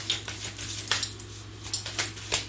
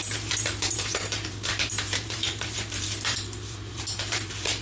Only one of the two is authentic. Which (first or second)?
first